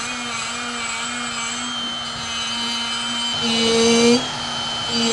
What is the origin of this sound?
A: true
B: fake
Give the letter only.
A